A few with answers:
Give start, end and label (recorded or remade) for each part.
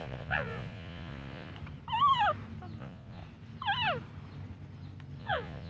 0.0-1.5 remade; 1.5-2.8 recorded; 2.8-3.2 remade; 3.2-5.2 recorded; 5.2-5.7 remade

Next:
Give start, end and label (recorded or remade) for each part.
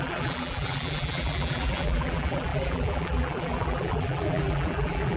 0.0-5.2 remade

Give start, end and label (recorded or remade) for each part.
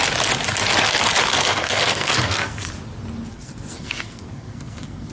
0.0-1.3 recorded; 1.3-2.7 remade; 2.7-3.3 recorded; 3.3-5.1 remade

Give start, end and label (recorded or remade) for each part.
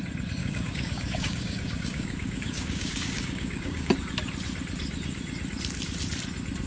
0.0-0.4 recorded; 0.4-3.9 remade; 3.9-6.7 recorded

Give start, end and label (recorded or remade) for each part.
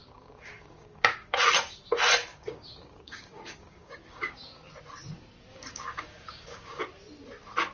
0.0-1.4 remade; 1.4-2.3 recorded; 2.3-4.7 remade; 4.7-5.5 recorded; 5.5-6.8 remade; 6.8-7.7 recorded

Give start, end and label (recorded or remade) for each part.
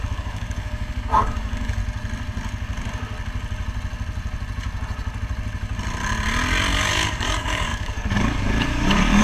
0.0-1.8 remade; 1.8-6.7 recorded; 6.7-9.2 remade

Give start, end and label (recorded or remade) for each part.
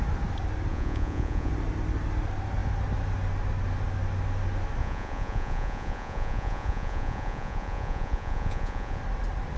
0.0-0.7 recorded; 0.7-1.5 remade; 1.5-4.8 recorded; 4.8-9.0 remade; 9.0-9.6 recorded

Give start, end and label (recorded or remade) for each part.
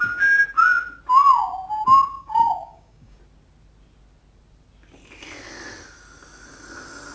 0.0-2.2 recorded; 2.2-3.2 remade; 3.2-7.1 recorded